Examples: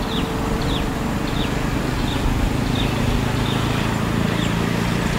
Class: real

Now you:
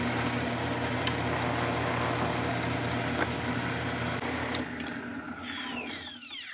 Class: real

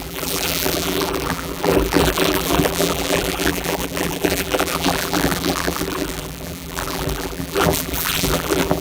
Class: fake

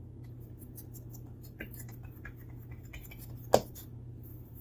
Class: real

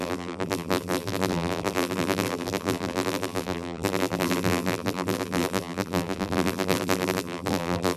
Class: fake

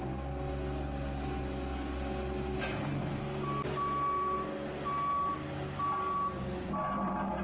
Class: real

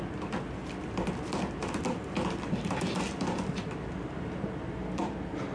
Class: fake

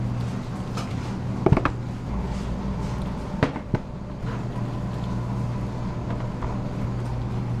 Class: real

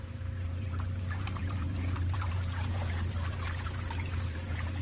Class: fake